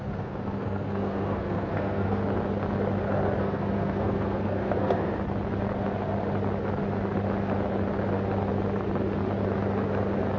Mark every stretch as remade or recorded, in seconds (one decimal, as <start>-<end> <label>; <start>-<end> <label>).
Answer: 0.0-2.2 remade; 2.2-3.4 recorded; 3.4-5.1 remade; 5.1-10.4 recorded